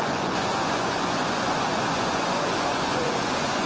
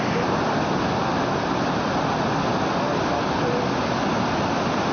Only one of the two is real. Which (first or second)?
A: second